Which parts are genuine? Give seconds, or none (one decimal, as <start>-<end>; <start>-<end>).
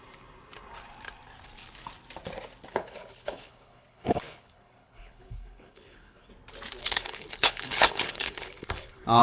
0.0-2.7; 6.3-6.8